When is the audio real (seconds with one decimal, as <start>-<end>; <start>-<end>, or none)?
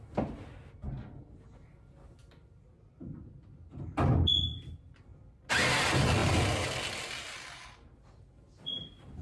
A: 0.0-9.2